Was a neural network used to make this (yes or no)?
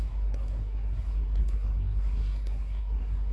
yes